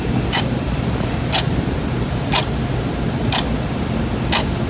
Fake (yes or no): no